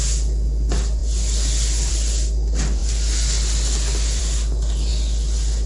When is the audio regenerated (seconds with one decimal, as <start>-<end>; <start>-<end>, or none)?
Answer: none